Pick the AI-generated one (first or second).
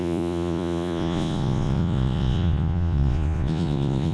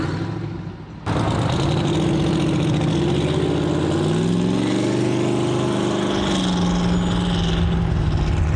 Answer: first